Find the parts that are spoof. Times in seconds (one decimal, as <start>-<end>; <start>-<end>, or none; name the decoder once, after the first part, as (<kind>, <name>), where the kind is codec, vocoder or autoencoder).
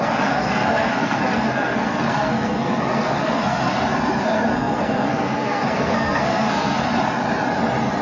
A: 0.0-3.7 (codec, SNAC); 4.2-6.8